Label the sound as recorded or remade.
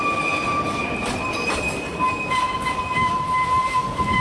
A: recorded